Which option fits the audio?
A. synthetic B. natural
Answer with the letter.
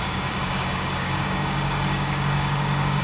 A